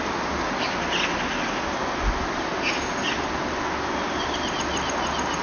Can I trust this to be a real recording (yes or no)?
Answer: yes